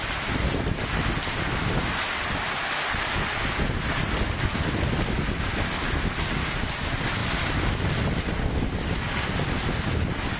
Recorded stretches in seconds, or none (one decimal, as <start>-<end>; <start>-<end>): 0.0-10.4